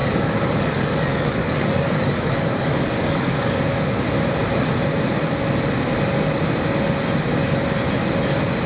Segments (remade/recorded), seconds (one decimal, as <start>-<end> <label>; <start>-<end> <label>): 0.0-3.6 remade; 3.6-8.7 recorded